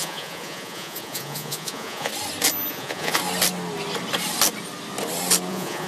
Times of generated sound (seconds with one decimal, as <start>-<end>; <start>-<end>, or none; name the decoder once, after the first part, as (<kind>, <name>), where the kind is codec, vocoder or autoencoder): 0.0-2.1 (vocoder, Vocos); 2.7-3.2; 5.5-5.9